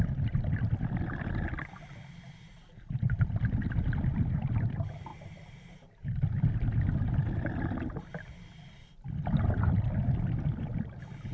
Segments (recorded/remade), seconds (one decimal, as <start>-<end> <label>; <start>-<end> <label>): 0.0-5.1 recorded; 5.1-5.7 remade; 5.7-11.3 recorded